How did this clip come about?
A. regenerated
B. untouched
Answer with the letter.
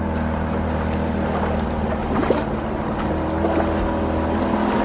B